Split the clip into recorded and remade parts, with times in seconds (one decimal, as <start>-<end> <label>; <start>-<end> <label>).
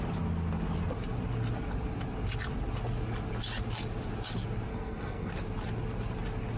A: 0.0-4.7 recorded; 4.7-5.3 remade; 5.3-6.6 recorded